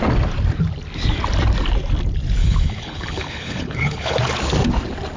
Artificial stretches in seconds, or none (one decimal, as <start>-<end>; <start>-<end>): 2.4-4.2